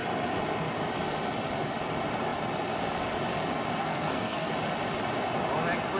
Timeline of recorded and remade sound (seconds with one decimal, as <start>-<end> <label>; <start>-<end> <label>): 0.0-3.8 recorded; 3.8-4.5 remade; 4.5-6.0 recorded